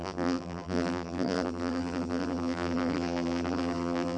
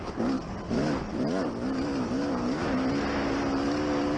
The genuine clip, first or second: second